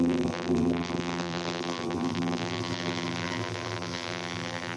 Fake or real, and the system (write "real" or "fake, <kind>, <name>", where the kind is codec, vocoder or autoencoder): fake, vocoder, BigVGAN v2